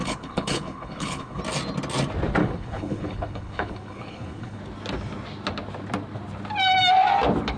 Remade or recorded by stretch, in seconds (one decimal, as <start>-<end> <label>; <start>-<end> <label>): 0.0-1.4 remade; 1.4-2.4 recorded; 2.4-4.6 remade; 4.6-7.6 recorded